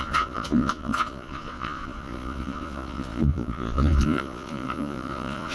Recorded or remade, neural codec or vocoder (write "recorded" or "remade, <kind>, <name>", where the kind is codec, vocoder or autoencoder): remade, vocoder, Vocos